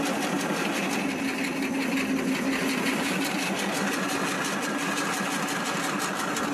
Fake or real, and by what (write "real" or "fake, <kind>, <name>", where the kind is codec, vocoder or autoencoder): real